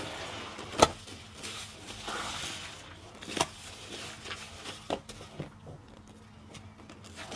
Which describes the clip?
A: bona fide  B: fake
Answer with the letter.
A